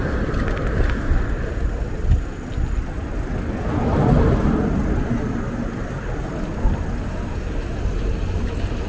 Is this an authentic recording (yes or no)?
yes